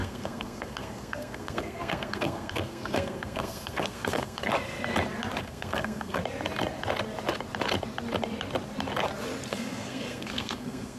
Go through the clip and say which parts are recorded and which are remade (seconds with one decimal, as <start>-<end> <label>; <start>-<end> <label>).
0.0-4.5 remade; 4.5-5.4 recorded; 5.4-6.2 remade; 6.2-9.5 recorded; 9.5-11.0 remade